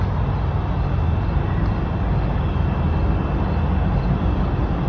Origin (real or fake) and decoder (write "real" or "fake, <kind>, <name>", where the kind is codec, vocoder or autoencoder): real